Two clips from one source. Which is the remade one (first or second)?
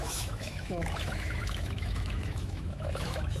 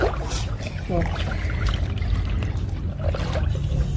first